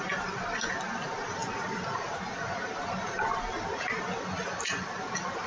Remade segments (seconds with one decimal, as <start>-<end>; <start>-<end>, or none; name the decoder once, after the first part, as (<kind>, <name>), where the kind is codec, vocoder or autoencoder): none